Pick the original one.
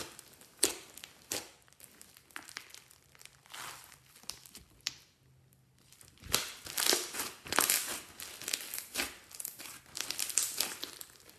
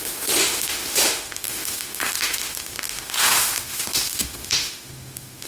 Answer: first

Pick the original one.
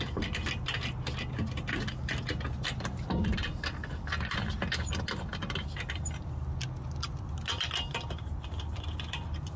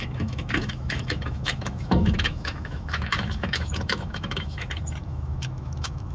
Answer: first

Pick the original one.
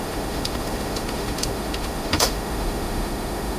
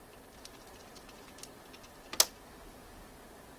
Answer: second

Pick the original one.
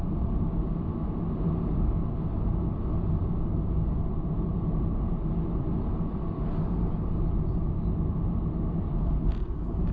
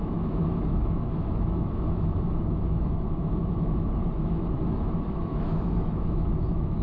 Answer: first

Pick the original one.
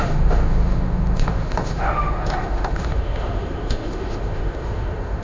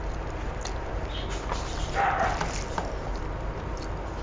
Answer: second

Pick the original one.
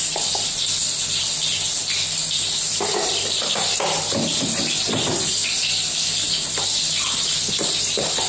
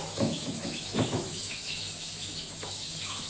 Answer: first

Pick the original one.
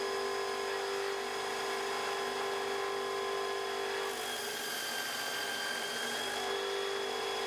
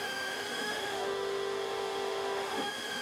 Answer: first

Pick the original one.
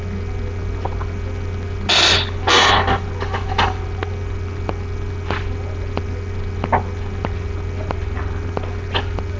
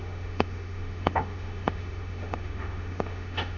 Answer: first